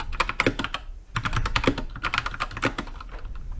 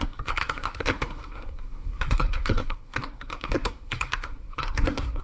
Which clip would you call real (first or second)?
first